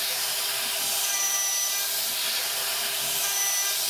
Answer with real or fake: real